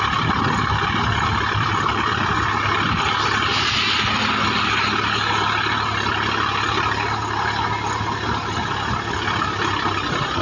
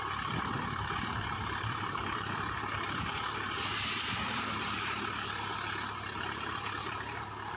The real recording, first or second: first